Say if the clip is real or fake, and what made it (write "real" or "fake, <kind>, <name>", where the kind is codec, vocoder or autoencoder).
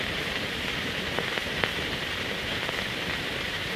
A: fake, vocoder, BigVGAN v2